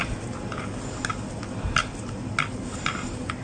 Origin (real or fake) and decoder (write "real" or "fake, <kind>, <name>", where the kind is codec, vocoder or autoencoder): real